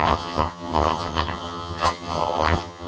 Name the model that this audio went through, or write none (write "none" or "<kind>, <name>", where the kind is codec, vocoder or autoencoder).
vocoder, HiFi-GAN